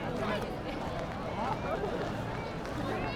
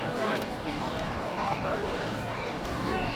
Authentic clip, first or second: first